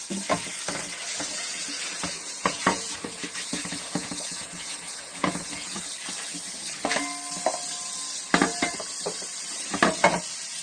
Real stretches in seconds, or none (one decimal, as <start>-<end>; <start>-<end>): 0.0-1.0; 5.8-10.6